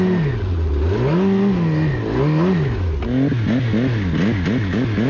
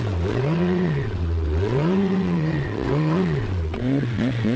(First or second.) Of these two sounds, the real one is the first